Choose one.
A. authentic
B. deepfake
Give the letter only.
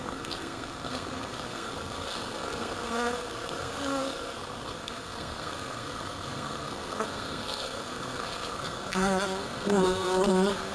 B